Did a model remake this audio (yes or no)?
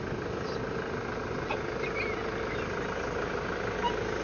no